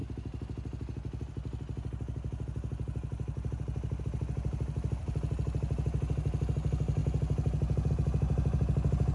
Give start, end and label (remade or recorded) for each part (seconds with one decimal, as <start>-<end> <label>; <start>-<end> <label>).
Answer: 0.0-9.1 recorded